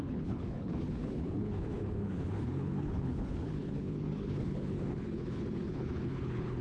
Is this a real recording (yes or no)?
no